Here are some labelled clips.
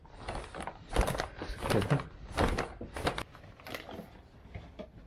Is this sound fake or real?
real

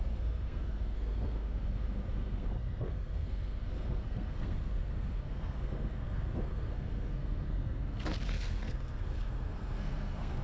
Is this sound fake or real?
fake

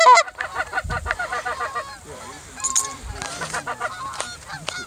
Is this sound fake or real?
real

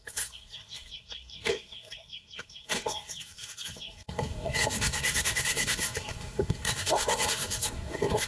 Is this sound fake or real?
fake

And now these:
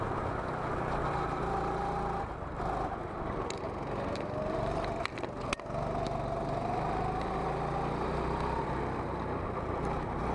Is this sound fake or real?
real